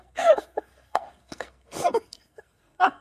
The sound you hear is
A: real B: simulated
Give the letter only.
B